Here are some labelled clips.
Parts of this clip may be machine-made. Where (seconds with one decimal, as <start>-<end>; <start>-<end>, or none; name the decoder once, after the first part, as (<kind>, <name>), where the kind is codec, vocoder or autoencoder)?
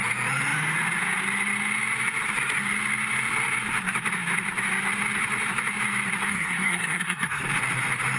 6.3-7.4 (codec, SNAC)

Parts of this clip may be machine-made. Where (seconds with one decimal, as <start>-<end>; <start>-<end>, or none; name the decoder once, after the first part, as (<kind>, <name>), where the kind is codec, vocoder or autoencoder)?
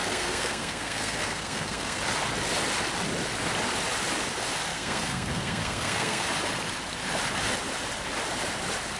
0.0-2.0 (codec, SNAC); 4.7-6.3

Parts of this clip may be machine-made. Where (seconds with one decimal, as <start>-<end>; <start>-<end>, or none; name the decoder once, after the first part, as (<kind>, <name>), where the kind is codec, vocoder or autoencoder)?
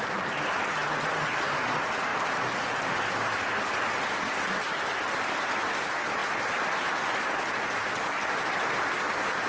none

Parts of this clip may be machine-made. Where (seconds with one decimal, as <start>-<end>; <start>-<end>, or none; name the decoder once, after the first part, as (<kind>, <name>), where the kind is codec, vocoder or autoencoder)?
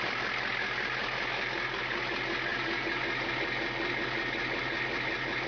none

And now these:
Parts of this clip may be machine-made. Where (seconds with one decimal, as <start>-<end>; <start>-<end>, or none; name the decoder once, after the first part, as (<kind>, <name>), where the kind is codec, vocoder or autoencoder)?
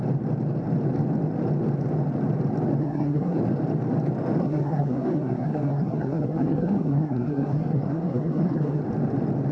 2.8-3.4 (codec, SNAC); 4.4-8.8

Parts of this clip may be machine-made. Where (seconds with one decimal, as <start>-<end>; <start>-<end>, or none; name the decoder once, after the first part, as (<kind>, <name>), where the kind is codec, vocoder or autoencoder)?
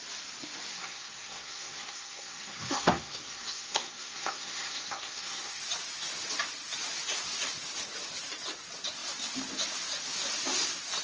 0.7-5.6 (codec, SNAC)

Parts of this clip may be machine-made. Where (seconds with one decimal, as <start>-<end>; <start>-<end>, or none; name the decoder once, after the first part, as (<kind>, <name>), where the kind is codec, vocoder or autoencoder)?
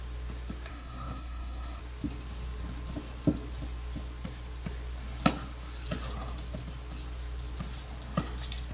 0.7-1.8 (codec, SNAC)